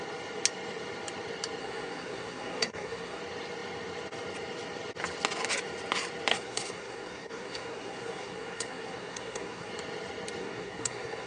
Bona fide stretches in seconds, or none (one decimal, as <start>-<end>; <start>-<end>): 0.0-1.6; 3.2-6.3; 9.7-10.4